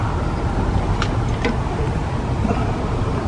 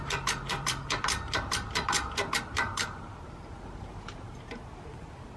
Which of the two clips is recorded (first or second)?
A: first